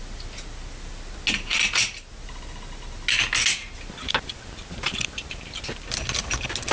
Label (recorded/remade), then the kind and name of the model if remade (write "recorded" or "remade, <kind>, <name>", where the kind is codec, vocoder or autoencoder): recorded